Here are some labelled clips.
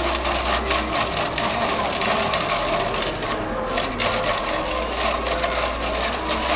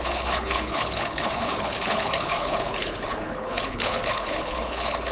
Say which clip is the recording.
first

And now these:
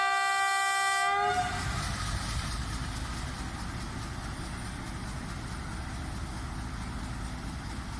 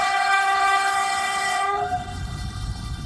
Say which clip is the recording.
first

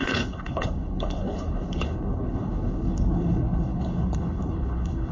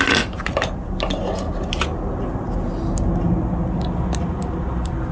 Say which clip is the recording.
second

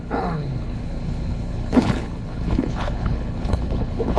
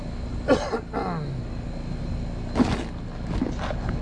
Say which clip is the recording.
second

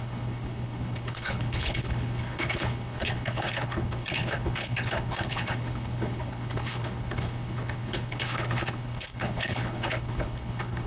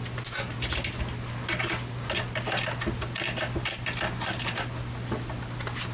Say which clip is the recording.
second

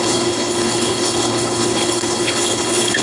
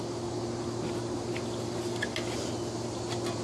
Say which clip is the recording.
second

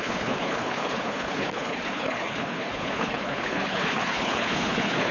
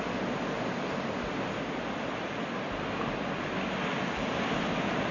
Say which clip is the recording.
second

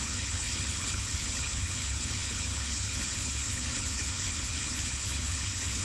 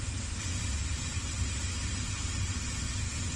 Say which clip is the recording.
second